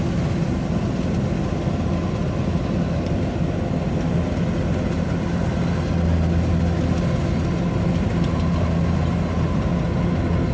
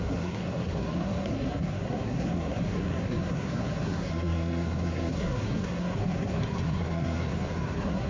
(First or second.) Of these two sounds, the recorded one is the first